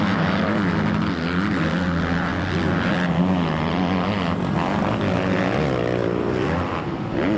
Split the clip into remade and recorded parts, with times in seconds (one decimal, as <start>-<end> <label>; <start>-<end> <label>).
0.0-7.4 recorded